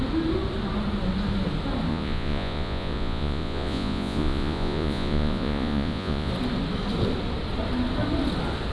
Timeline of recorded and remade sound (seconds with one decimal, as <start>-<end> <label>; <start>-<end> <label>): 0.0-1.9 recorded; 1.9-6.3 remade; 6.3-8.7 recorded